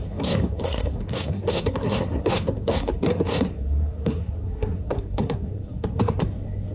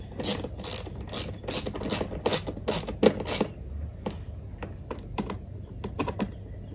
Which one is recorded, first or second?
second